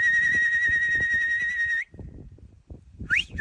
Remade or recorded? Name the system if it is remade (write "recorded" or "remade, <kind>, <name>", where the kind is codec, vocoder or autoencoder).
remade, vocoder, BigVGAN v2